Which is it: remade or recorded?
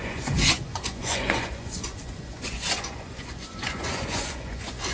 remade